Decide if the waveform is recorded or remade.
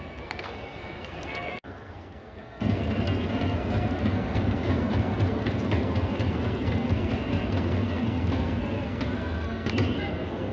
remade